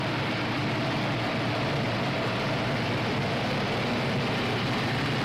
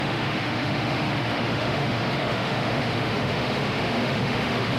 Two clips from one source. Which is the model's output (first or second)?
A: second